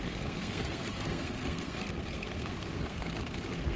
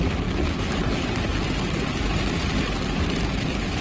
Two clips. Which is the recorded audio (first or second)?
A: second